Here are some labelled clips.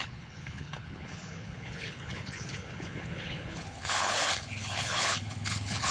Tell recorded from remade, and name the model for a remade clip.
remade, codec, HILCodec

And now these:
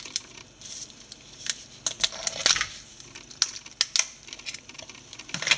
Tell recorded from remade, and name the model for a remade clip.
recorded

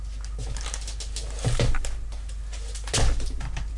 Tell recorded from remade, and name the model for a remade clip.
recorded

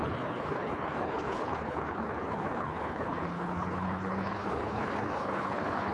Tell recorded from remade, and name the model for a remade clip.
remade, codec, HILCodec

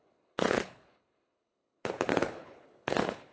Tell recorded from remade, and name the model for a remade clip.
remade, codec, HILCodec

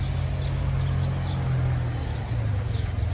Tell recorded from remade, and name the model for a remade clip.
recorded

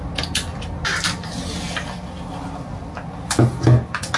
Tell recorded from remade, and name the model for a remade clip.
recorded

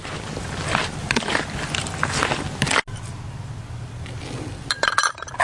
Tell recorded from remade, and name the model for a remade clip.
recorded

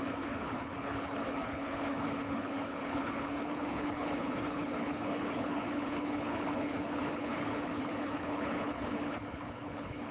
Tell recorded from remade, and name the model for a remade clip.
remade, codec, HILCodec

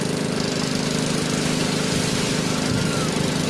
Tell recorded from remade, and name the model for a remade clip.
recorded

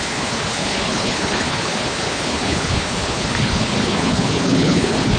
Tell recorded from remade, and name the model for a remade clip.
remade, codec, HILCodec